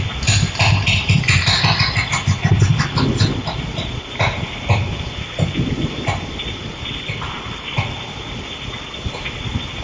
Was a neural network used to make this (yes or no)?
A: no